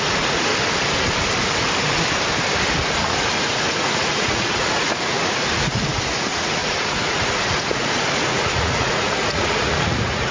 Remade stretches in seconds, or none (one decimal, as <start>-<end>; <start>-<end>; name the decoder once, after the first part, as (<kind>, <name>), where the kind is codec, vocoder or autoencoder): 0.0-0.5 (vocoder, Vocos); 2.9-10.3